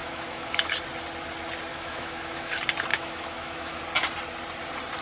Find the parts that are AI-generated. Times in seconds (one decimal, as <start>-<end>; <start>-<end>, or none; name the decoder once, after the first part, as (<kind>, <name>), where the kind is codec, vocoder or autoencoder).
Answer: 0.0-0.7 (autoencoder, DAC-VAE); 1.7-2.5; 2.9-3.8